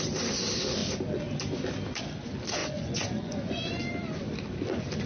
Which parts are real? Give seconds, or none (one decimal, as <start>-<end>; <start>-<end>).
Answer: 0.0-2.6; 3.8-5.1